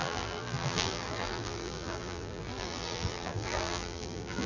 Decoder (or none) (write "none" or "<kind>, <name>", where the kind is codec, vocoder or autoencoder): vocoder, BigVGAN v2